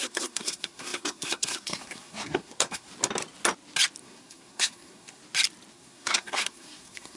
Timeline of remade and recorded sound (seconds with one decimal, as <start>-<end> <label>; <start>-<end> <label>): 0.0-2.9 remade; 2.9-4.0 recorded; 4.0-5.2 remade; 5.2-5.7 recorded; 5.7-7.2 remade